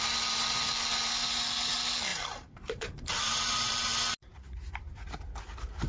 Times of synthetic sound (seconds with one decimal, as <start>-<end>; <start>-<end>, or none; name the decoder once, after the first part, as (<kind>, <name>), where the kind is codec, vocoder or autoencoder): 2.1-3.9 (vocoder, BigVGAN v2); 4.3-4.9